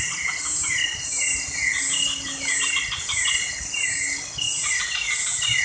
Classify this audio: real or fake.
real